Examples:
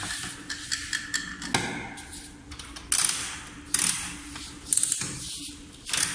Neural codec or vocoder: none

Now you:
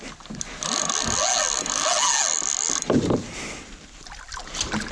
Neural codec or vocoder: none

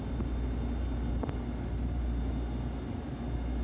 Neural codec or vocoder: none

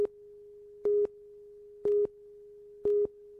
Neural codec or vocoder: none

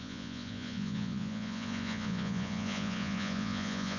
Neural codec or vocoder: vocoder, Vocos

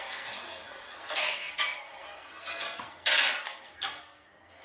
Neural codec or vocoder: codec, SNAC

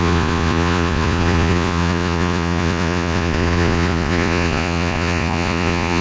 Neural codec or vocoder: vocoder, Vocos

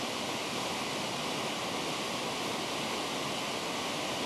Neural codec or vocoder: none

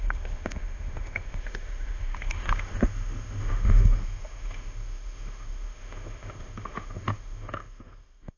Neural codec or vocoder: autoencoder, DAC-VAE